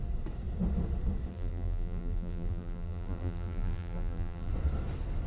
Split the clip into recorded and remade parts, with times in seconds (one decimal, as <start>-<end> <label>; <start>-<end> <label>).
0.0-1.3 recorded; 1.3-4.5 remade; 4.5-5.3 recorded